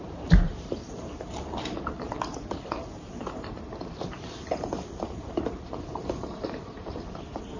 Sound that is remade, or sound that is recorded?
remade